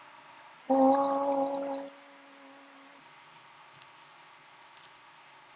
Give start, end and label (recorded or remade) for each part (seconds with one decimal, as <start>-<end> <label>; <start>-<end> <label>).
0.0-0.6 remade; 0.6-3.0 recorded; 3.0-5.6 remade